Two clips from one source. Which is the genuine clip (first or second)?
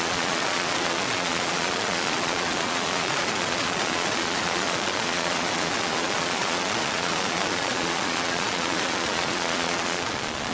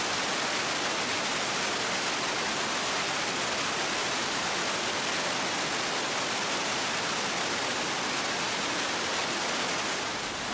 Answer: second